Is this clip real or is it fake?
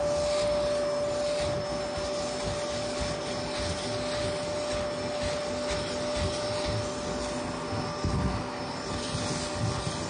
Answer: real